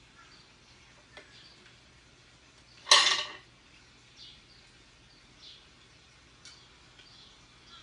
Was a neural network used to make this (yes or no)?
no